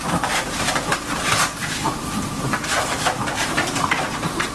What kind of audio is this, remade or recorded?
remade